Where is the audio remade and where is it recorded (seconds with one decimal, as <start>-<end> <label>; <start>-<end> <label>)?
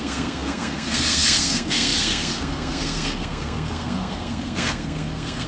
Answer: 0.0-5.5 remade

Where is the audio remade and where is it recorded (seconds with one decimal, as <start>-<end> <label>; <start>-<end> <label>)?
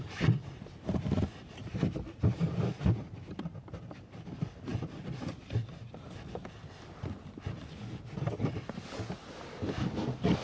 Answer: 0.0-1.6 recorded; 1.6-4.2 remade; 4.2-10.4 recorded